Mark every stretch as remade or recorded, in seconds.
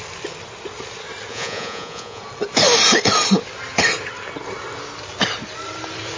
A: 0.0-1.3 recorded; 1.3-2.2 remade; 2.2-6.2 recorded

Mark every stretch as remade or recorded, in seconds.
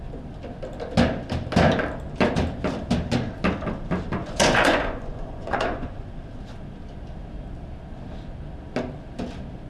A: 0.0-4.2 recorded; 4.2-6.2 remade; 6.2-9.7 recorded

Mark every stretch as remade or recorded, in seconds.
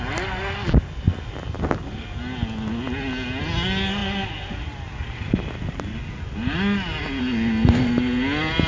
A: 0.0-8.7 recorded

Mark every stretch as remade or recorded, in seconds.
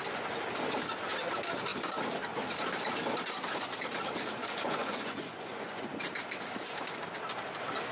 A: 0.0-4.4 recorded; 4.4-6.0 remade; 6.0-7.9 recorded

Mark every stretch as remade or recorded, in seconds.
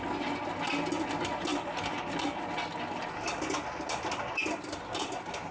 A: 0.0-5.5 recorded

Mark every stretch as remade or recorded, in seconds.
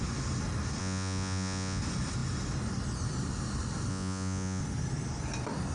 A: 0.0-0.8 recorded; 0.8-1.8 remade; 1.8-3.9 recorded; 3.9-4.6 remade; 4.6-5.7 recorded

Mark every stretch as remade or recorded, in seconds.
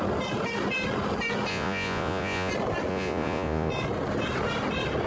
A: 0.0-1.5 recorded; 1.5-2.5 remade; 2.5-2.9 recorded; 2.9-3.7 remade; 3.7-5.1 recorded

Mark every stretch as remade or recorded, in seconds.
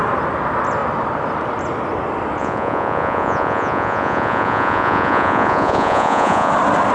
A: 0.0-2.4 recorded; 2.4-6.5 remade; 6.5-6.9 recorded